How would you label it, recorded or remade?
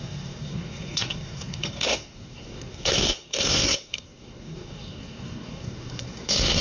remade